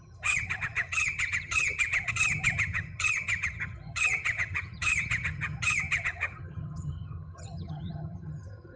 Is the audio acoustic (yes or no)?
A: no